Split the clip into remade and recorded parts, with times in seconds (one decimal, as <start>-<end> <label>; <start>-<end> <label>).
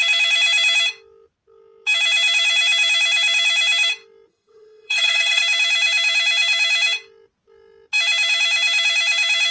0.0-4.3 recorded; 4.3-5.4 remade; 5.4-9.5 recorded